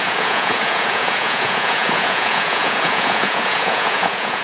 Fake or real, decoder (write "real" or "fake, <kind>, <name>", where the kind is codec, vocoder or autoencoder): fake, vocoder, Vocos